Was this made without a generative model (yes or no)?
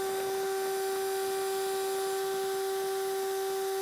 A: yes